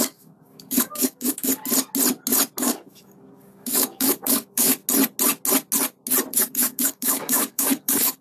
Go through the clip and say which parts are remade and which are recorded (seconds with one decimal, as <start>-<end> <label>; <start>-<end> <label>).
0.0-1.5 remade; 1.5-2.6 recorded; 2.6-4.8 remade; 4.8-6.3 recorded; 6.3-8.2 remade